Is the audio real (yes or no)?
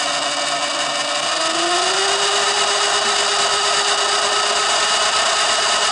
yes